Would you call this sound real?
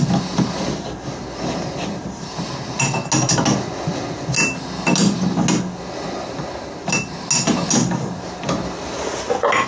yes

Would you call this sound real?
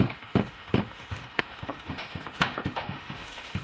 no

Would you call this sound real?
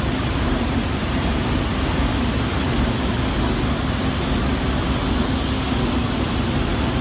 yes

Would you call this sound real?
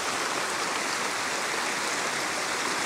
yes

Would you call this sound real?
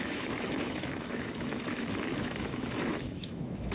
no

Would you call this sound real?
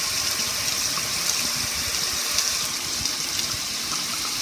yes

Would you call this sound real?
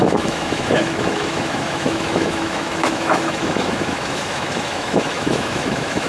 no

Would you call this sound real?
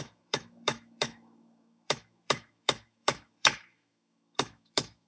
no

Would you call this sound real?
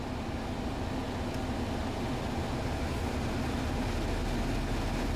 yes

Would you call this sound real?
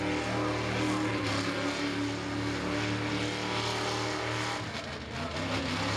yes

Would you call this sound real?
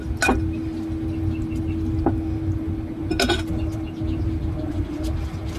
yes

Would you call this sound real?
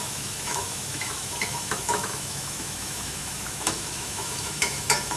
no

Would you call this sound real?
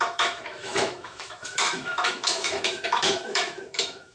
no